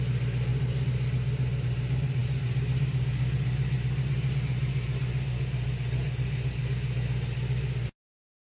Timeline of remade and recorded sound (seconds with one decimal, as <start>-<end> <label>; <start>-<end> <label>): 0.0-8.4 recorded